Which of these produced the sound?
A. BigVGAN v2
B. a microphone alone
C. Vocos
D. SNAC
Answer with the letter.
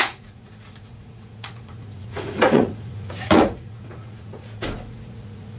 C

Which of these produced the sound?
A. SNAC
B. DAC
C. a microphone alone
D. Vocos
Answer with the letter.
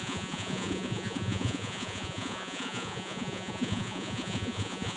D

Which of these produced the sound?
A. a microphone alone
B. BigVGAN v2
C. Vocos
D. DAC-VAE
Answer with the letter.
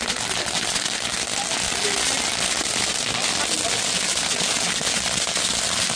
A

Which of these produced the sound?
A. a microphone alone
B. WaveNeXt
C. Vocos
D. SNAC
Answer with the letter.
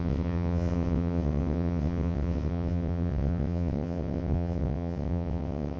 B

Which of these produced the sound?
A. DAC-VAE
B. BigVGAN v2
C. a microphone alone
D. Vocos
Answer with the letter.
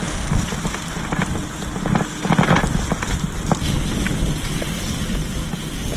C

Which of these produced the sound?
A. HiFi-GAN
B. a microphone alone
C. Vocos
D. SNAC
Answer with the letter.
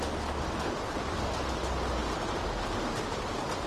B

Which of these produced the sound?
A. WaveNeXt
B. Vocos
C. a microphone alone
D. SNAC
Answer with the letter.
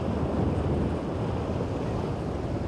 C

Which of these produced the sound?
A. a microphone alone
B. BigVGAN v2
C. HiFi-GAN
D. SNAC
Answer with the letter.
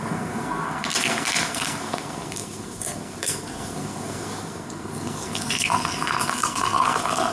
D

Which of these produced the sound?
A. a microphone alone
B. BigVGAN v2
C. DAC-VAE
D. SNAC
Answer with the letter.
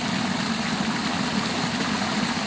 A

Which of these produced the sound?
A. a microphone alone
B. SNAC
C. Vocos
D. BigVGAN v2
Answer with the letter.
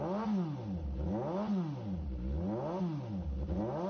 A